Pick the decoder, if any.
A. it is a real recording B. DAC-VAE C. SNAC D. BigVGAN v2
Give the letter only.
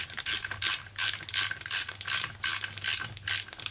A